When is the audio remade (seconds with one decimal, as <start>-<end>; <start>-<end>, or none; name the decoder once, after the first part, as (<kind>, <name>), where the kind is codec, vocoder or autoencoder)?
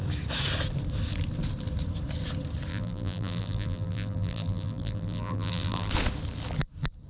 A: 2.7-5.9 (vocoder, BigVGAN v2)